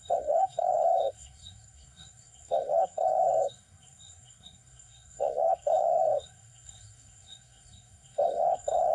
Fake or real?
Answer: fake